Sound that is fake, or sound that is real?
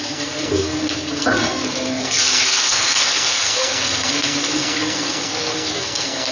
fake